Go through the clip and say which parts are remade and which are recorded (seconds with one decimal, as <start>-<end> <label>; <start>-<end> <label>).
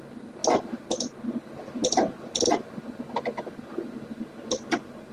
0.0-5.1 recorded